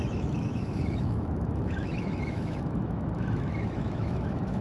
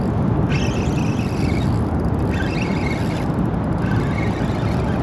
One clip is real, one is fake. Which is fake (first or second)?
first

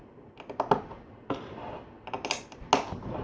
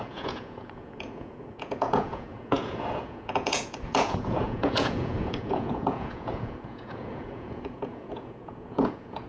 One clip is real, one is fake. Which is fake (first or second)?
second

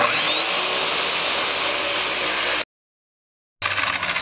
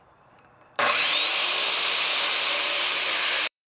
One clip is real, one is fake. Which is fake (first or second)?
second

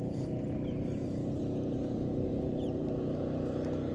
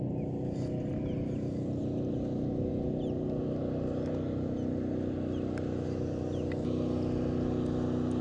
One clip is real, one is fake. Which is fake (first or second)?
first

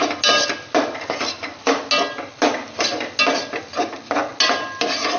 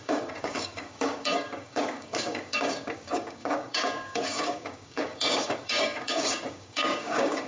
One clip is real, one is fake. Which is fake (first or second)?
second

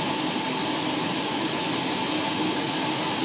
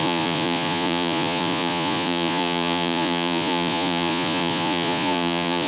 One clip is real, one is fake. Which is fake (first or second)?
second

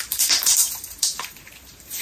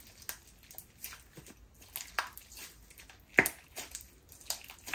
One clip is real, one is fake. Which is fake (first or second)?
first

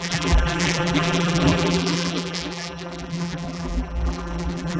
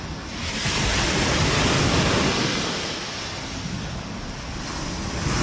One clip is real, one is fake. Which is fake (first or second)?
first